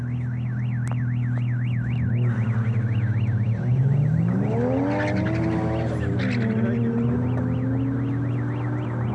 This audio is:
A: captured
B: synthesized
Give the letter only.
A